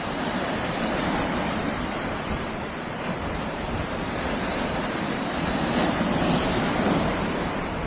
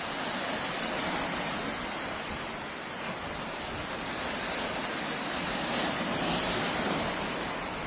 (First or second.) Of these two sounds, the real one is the second